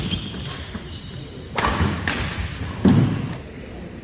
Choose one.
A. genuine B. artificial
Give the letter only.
A